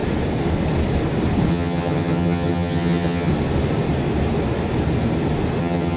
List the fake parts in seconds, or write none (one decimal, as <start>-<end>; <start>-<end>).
1.5-3.3; 5.6-6.0